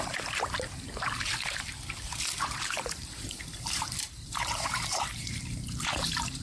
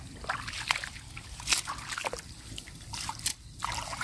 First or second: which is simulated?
first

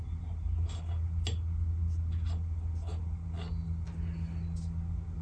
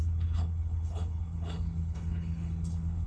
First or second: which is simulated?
second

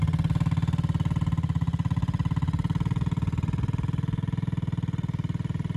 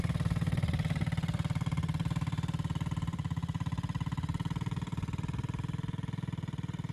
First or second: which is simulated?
second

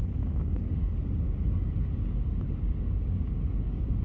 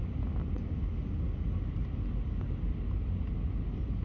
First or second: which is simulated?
first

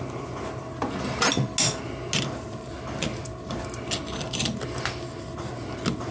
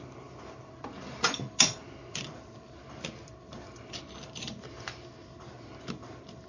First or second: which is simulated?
second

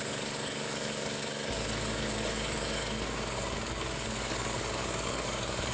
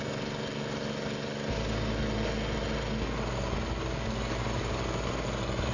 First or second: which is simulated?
first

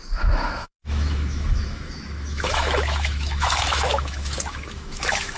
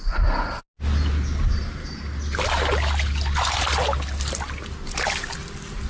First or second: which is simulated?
first